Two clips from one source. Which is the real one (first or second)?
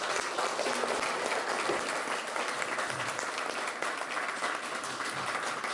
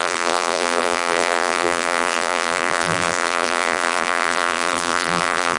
first